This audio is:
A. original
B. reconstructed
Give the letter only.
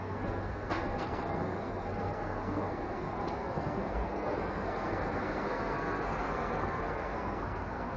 B